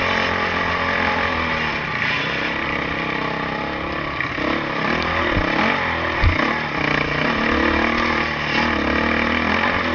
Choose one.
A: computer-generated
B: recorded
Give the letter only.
B